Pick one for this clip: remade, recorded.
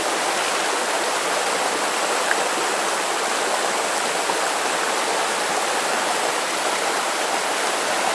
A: recorded